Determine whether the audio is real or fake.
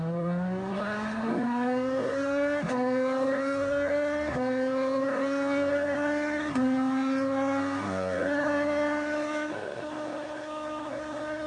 fake